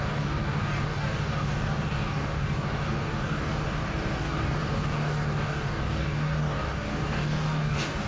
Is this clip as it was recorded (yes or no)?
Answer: no